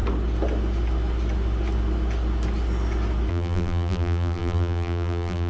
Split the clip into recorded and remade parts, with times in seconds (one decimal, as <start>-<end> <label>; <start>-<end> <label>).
0.0-3.3 recorded; 3.3-5.5 remade